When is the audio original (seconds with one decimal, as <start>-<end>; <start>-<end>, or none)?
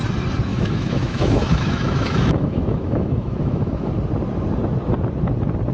0.0-0.5; 3.9-5.7